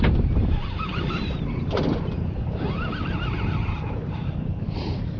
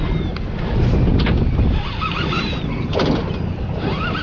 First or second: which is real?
second